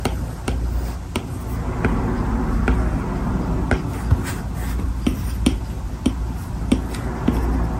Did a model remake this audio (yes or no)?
no